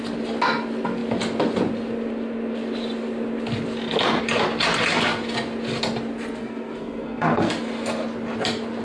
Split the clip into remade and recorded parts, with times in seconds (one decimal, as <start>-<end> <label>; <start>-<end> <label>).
0.0-6.4 recorded; 6.4-7.5 remade; 7.5-8.8 recorded